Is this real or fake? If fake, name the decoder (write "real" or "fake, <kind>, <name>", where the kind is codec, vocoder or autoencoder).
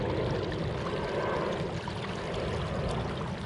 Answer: real